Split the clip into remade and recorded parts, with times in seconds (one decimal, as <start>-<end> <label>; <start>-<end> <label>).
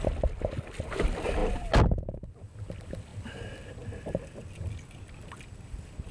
0.0-6.1 recorded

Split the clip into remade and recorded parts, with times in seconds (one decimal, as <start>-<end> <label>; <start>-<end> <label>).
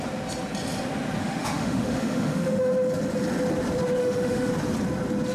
0.0-1.2 recorded; 1.2-2.7 remade; 2.7-4.0 recorded; 4.0-4.5 remade; 4.5-5.3 recorded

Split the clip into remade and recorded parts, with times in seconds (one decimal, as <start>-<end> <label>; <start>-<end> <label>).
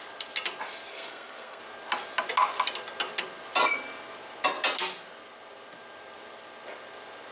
0.0-0.9 recorded; 0.9-1.6 remade; 1.6-7.3 recorded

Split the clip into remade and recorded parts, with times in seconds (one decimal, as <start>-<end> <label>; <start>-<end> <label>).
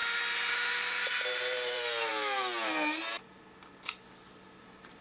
0.0-0.5 recorded; 0.5-2.1 remade; 2.1-4.6 recorded; 4.6-5.0 remade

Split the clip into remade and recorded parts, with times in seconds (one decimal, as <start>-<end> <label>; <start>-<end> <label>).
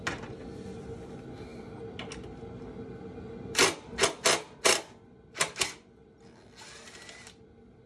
0.0-7.9 recorded